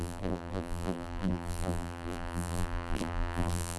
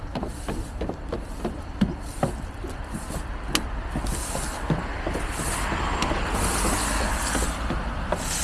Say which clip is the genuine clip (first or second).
second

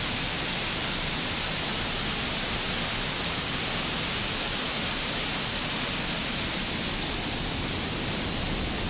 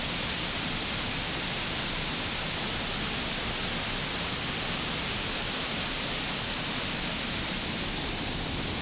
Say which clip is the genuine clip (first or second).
first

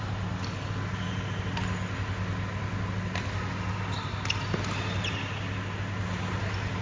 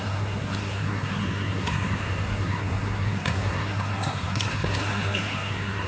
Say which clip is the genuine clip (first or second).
first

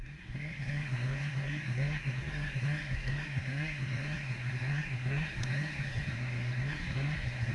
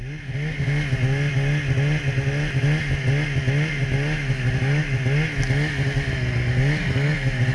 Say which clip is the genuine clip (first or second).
second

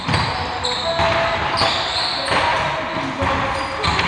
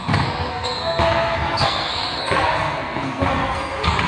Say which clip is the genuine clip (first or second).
first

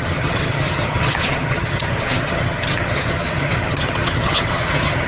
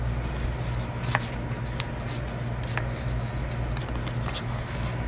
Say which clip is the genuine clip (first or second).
second